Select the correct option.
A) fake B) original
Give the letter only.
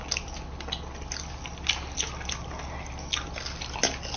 B